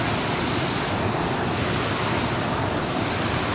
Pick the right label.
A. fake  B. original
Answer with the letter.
B